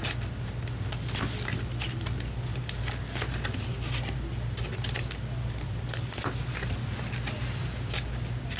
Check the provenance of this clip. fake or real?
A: real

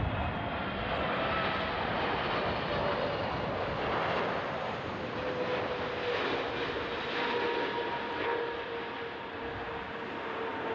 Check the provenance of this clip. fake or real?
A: real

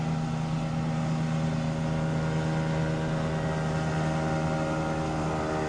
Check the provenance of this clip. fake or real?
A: real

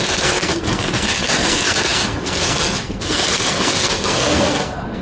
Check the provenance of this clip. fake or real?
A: fake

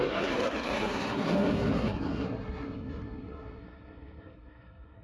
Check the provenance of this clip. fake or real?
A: fake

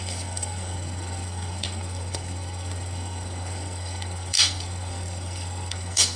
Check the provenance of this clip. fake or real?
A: fake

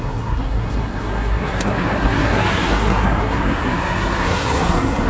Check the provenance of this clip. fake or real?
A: fake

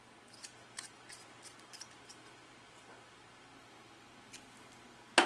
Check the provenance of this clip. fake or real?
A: real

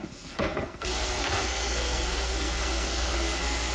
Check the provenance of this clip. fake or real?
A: fake